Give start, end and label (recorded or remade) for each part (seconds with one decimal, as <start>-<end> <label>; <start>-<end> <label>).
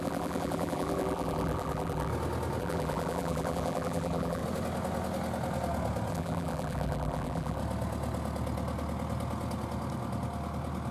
0.0-2.1 remade; 2.1-2.6 recorded; 2.6-4.4 remade; 4.4-6.1 recorded; 6.1-7.6 remade; 7.6-10.9 recorded